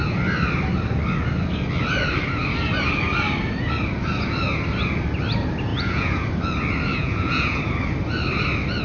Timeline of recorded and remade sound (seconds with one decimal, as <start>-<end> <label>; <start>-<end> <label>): 0.0-5.7 recorded; 5.7-6.3 remade; 6.3-6.9 recorded; 6.9-7.6 remade; 7.6-8.8 recorded